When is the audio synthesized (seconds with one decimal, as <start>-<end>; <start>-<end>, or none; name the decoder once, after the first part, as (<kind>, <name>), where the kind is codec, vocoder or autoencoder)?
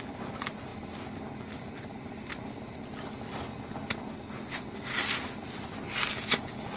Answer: none